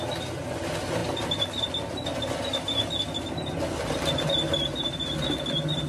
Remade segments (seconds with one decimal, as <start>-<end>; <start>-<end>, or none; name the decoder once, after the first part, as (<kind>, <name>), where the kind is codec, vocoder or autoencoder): none